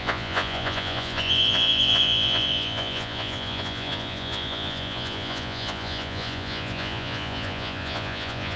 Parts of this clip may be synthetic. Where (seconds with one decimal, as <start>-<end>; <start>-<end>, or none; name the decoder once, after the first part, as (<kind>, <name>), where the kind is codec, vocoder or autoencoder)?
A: 0.0-8.6 (vocoder, Vocos)